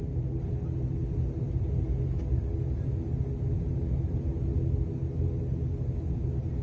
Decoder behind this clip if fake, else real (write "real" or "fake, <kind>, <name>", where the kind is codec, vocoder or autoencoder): real